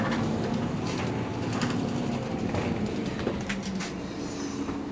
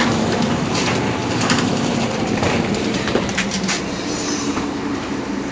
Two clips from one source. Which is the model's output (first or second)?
second